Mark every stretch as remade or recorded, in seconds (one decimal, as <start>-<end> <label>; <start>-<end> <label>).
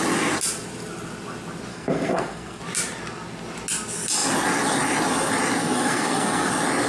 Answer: 0.0-1.7 recorded; 1.7-2.6 remade; 2.6-5.6 recorded; 5.6-6.5 remade; 6.5-6.9 recorded